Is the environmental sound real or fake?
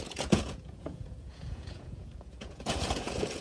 fake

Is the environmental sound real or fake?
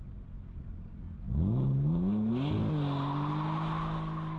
real